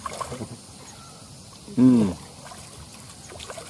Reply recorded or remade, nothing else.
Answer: recorded